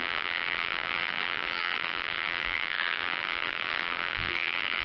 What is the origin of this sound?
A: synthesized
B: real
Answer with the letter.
A